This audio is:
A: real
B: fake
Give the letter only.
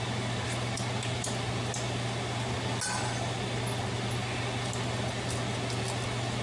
A